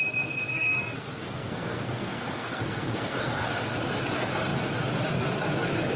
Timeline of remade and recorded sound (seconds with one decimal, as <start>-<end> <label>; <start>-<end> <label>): 0.0-0.5 recorded; 0.5-3.5 remade; 3.5-6.0 recorded